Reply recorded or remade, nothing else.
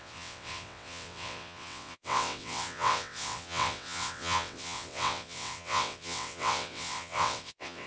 remade